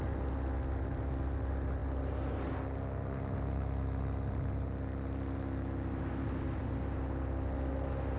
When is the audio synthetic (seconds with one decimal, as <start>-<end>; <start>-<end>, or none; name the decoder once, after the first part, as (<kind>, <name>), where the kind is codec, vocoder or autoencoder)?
none